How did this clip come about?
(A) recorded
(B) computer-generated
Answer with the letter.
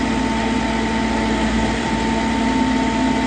A